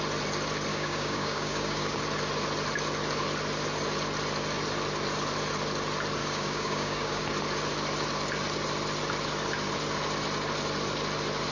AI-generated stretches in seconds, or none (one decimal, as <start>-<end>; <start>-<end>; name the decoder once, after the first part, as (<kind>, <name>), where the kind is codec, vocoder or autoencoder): 0.7-2.0 (codec, DAC); 6.2-7.2